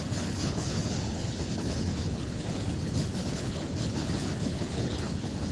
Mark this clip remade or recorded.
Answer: remade